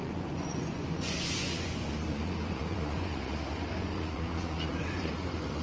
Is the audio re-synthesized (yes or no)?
yes